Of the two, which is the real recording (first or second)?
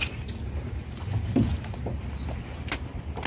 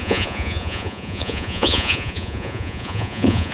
first